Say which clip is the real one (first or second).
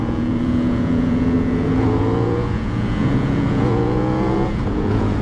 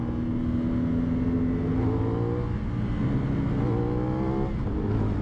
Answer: second